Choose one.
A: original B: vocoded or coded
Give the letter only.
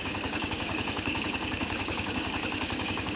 B